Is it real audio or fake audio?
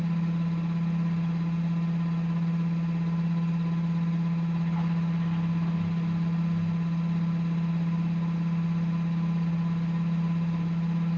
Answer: real